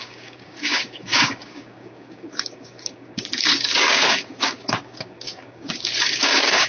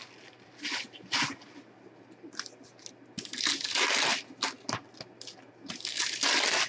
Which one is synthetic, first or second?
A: first